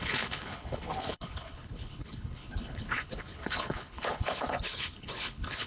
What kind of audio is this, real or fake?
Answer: fake